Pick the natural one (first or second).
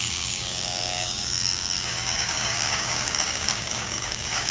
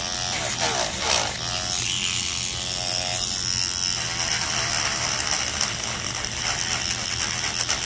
second